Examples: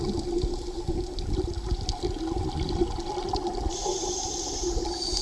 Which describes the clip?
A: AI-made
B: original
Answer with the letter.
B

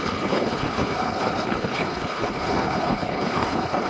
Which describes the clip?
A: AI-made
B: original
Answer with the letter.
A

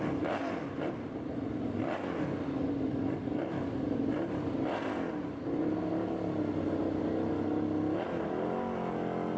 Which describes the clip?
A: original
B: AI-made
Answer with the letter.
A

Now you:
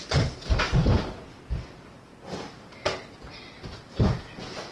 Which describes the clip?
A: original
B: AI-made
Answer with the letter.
A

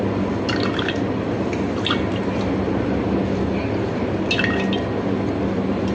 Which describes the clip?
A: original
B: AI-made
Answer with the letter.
A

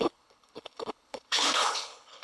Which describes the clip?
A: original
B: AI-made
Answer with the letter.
B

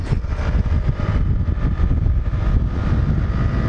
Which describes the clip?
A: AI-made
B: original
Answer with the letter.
B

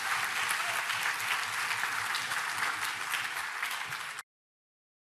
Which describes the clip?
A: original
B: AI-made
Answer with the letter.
B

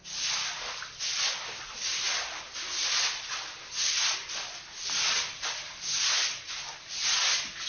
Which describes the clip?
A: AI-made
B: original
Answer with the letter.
B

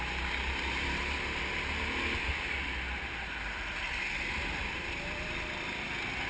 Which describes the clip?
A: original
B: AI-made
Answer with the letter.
A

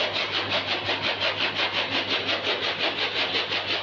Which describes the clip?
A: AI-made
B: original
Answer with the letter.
B